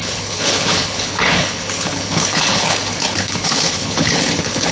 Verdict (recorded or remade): remade